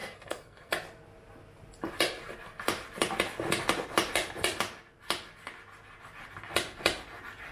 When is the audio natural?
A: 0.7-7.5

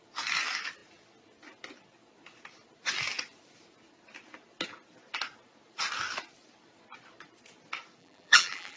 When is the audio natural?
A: 0.0-8.0

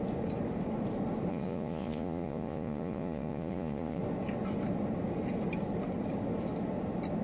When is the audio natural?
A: 0.0-1.3; 4.0-7.2

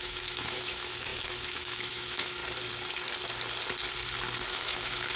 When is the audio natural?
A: 2.4-4.5

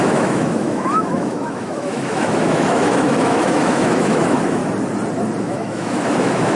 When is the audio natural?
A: 4.6-5.4

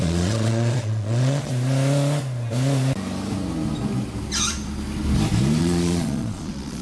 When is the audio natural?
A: 1.5-5.6

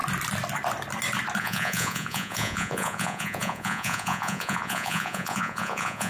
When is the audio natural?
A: 0.0-1.4

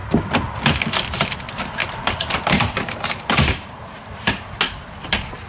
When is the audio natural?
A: 0.0-1.8; 4.6-5.5